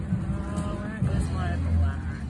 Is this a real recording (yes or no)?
yes